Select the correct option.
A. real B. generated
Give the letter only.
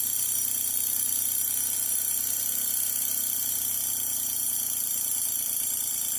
A